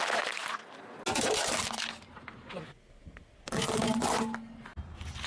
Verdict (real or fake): real